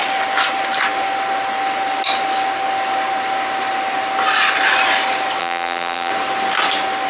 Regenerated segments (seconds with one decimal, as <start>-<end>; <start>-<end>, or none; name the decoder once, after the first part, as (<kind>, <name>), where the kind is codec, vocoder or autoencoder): 5.4-6.1 (vocoder, BigVGAN v2)